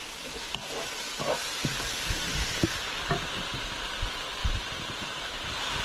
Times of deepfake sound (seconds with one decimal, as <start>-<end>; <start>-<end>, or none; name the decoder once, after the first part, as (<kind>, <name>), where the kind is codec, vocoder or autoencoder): 1.6-2.8 (vocoder, BigVGAN v2); 4.4-5.8